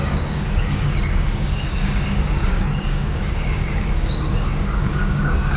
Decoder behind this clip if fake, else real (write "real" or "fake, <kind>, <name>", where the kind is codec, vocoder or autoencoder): fake, codec, DAC